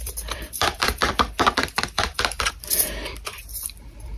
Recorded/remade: remade